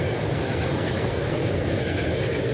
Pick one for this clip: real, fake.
fake